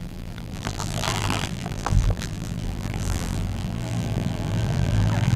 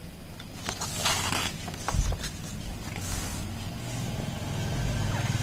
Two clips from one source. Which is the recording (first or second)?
second